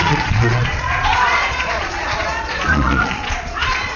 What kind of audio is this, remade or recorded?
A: remade